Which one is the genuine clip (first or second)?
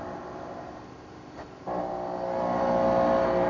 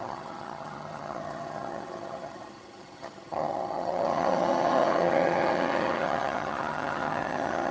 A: first